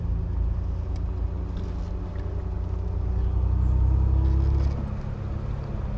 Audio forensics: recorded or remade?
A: recorded